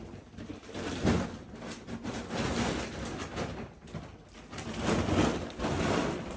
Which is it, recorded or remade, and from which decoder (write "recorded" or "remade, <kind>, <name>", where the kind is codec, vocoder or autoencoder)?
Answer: recorded